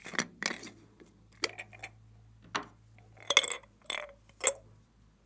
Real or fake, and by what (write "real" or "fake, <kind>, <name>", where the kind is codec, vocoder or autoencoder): real